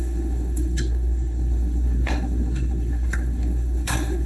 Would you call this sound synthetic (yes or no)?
yes